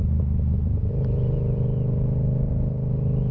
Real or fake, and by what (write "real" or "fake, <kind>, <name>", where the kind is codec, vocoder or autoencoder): real